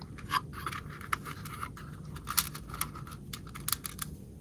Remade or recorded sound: recorded